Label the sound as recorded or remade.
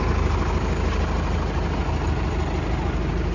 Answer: recorded